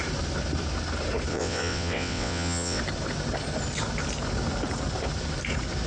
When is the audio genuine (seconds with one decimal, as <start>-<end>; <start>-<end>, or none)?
0.0-1.3; 2.8-5.9